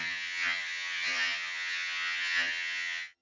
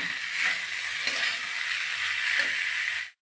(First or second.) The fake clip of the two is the first